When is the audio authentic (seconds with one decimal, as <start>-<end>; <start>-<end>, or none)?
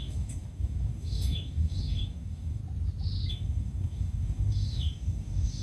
2.6-3.3